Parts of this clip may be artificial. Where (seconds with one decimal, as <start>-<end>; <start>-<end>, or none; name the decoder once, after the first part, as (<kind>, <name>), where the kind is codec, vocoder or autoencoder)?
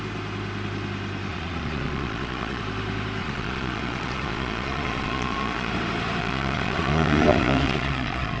1.3-2.6 (vocoder, Vocos); 3.2-5.7; 6.2-8.4